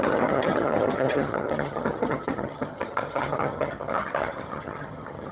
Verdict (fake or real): fake